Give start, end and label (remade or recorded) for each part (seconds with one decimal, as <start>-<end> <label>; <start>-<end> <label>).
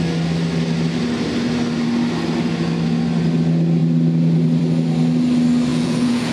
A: 0.0-5.7 recorded; 5.7-6.3 remade